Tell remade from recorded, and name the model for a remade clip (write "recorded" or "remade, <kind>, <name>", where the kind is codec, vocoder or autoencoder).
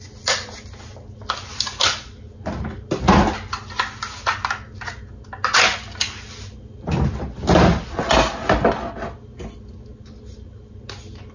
recorded